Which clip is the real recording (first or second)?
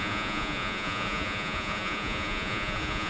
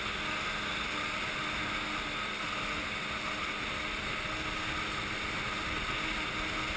second